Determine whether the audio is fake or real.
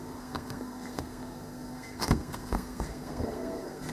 fake